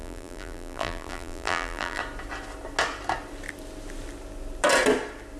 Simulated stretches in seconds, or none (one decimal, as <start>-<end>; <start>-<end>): 0.0-2.0